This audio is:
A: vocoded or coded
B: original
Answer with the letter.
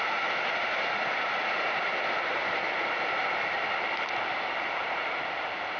B